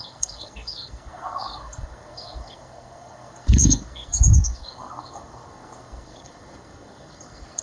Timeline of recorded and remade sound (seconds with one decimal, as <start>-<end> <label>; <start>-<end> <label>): 0.0-7.6 remade